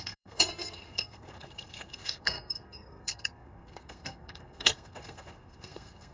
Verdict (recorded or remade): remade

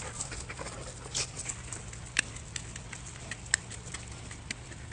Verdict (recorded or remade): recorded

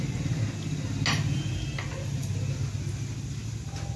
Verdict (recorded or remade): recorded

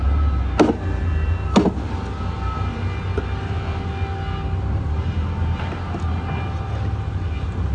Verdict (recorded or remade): recorded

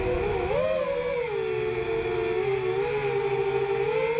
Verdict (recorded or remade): recorded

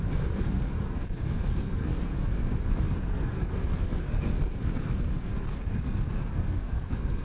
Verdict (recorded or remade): remade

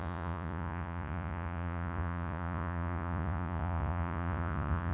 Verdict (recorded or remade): remade